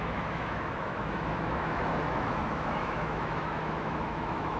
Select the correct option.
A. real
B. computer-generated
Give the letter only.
B